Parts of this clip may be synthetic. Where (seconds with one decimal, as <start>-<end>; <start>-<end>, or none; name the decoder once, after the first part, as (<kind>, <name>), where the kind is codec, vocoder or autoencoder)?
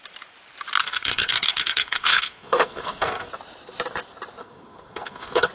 0.8-3.3 (codec, SNAC); 4.4-5.5